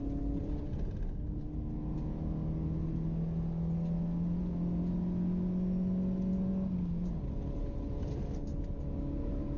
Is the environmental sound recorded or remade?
recorded